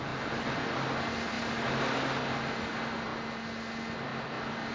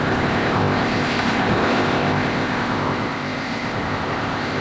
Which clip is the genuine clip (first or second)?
first